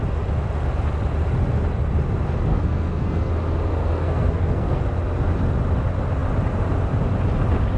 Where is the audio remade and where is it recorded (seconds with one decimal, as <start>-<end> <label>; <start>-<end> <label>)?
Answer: 0.0-2.5 recorded; 2.5-3.3 remade; 3.3-3.7 recorded; 3.7-4.8 remade; 4.8-7.8 recorded